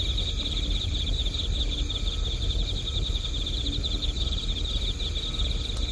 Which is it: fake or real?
real